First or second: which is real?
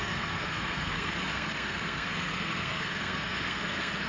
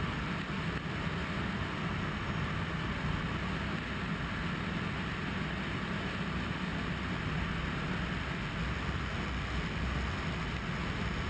second